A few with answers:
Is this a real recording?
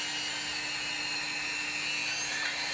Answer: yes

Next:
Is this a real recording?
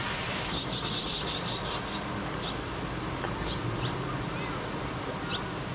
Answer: yes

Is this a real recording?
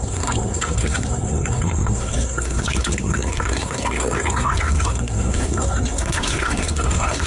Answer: no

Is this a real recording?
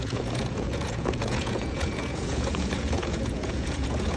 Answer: no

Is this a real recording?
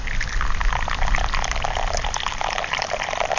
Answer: yes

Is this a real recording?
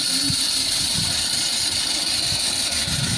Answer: yes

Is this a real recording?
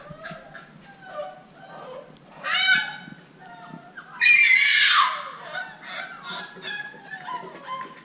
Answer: yes